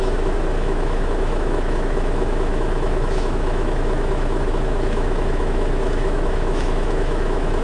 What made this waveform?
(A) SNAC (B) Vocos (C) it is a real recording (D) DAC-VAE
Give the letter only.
D